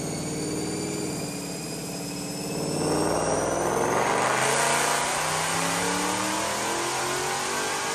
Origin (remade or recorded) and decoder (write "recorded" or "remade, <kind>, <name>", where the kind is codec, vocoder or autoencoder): recorded